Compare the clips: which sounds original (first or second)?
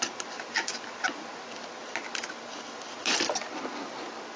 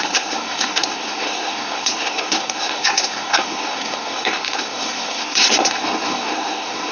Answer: first